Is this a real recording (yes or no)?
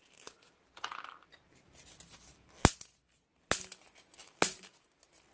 yes